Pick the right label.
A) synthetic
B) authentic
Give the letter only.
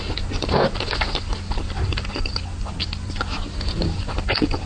B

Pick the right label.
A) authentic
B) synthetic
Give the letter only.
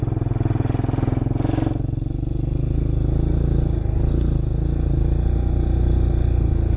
A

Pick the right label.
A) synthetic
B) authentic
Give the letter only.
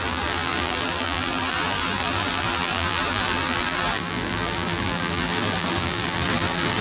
A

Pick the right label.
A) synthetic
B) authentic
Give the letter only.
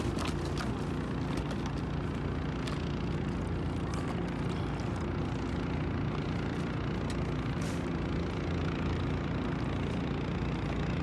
B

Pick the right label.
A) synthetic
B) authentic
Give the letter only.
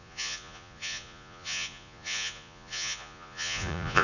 A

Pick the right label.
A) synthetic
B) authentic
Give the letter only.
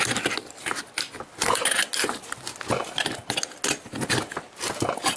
B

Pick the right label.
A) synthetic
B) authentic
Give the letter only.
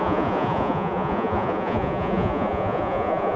A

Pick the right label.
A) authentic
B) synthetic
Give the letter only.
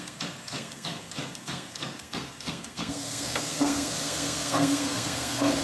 B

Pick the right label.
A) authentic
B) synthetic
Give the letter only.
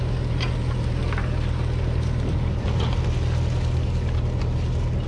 A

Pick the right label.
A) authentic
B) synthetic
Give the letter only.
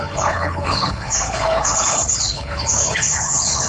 B